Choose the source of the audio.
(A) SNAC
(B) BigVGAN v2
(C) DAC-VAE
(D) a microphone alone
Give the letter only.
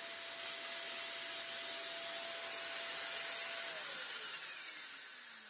D